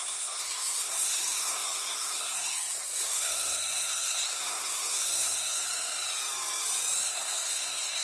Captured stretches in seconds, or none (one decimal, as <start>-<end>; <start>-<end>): 5.7-7.1